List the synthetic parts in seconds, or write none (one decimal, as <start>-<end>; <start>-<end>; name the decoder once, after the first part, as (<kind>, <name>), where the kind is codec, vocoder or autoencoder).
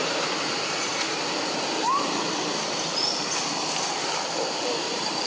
0.0-0.9 (vocoder, BigVGAN v2); 4.1-5.3